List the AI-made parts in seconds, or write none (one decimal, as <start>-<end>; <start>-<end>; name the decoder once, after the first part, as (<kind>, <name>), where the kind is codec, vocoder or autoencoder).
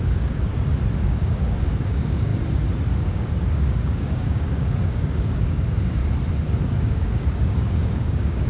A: 0.0-0.5 (codec, DAC); 1.1-2.3; 3.0-6.0; 6.7-8.5